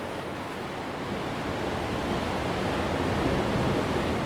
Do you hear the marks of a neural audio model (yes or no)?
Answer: no